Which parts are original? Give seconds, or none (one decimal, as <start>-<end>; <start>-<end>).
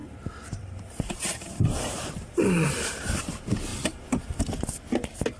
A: 3.2-5.4